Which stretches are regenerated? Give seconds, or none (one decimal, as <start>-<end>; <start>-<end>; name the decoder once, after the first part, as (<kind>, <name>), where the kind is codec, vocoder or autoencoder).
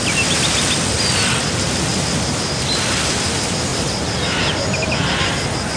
none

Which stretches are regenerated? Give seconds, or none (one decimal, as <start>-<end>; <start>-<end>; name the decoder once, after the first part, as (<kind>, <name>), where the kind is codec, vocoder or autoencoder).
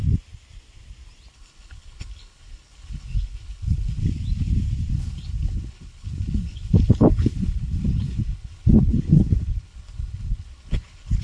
1.3-4.0 (codec, HILCodec); 4.9-11.2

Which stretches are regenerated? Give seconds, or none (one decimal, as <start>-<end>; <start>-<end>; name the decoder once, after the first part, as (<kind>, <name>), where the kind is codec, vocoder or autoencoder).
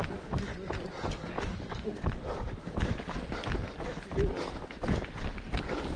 0.0-0.5 (codec, DAC); 1.1-3.4; 5.6-6.0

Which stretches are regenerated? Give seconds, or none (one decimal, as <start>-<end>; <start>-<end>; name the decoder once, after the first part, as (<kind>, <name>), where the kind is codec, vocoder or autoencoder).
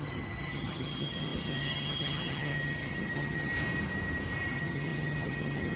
0.0-3.5 (vocoder, HiFi-GAN); 4.5-5.8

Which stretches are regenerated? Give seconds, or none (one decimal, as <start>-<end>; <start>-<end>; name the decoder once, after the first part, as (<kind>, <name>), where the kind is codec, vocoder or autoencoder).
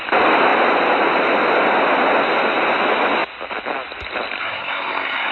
4.4-5.3 (codec, SNAC)